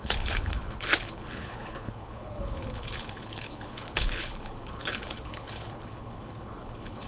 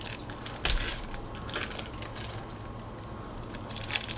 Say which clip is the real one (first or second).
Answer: second